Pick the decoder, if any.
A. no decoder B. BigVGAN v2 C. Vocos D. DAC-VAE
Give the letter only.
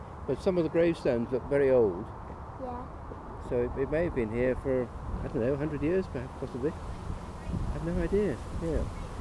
A